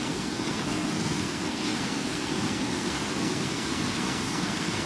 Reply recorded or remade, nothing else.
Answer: remade